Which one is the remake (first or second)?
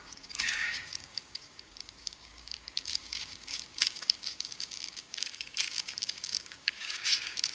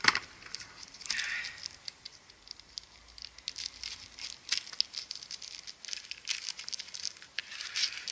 first